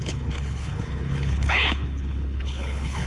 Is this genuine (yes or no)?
no